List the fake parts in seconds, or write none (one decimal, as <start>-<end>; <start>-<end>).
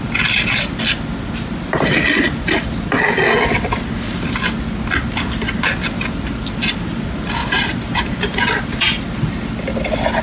7.4-8.9